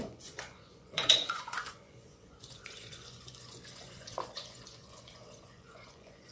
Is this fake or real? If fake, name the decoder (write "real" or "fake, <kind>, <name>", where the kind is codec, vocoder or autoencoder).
fake, vocoder, Vocos